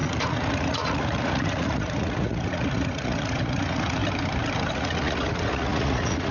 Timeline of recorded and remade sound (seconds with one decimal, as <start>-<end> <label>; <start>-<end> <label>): 0.0-4.0 remade; 4.0-4.7 recorded; 4.7-6.3 remade